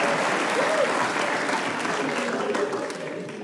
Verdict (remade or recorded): recorded